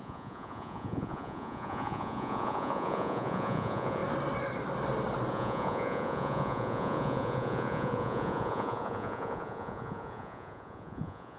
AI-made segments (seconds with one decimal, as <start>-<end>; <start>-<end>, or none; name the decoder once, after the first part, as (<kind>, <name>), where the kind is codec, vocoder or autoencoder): 0.0-4.0 (vocoder, Vocos); 5.3-11.4